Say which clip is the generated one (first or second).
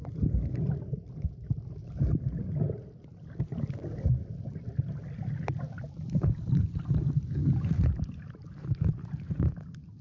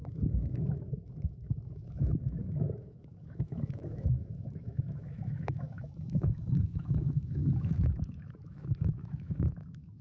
second